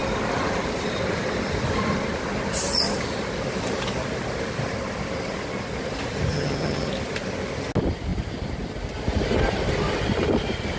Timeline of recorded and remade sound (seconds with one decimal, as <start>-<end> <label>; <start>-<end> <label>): 0.0-6.3 recorded; 6.3-6.9 remade; 6.9-10.8 recorded